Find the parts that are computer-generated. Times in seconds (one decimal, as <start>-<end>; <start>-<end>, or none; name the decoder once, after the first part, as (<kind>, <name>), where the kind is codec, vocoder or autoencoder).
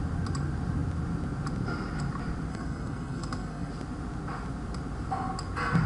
2.5-3.7 (codec, SNAC)